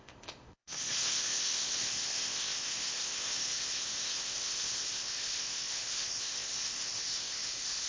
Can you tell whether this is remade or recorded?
remade